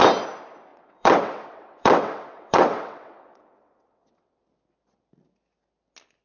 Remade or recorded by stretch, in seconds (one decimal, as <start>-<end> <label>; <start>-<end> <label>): 0.0-0.7 recorded; 0.7-4.4 remade; 4.4-6.2 recorded